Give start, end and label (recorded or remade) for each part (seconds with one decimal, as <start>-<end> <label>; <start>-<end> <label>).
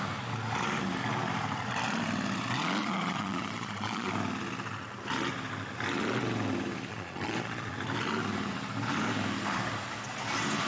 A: 0.0-2.8 recorded; 2.8-4.1 remade; 4.1-6.9 recorded; 6.9-7.7 remade; 7.7-10.7 recorded